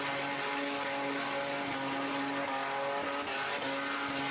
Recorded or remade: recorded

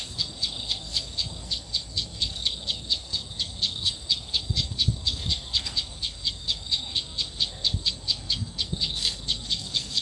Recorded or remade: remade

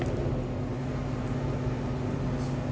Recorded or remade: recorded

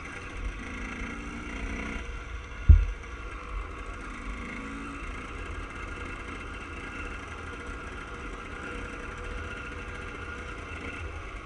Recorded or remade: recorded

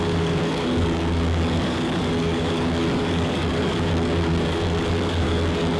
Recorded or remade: remade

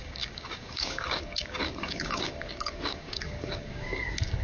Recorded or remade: remade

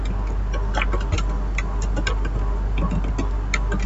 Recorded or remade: recorded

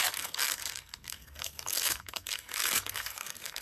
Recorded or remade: remade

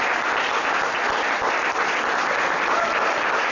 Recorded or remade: recorded